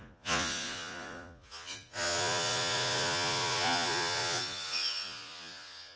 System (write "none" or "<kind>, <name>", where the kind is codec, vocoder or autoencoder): vocoder, Vocos